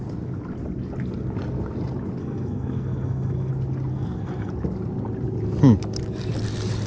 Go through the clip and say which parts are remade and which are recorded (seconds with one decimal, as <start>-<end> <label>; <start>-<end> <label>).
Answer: 0.0-2.2 recorded; 2.2-3.5 remade; 3.5-3.9 recorded; 3.9-4.5 remade; 4.5-6.9 recorded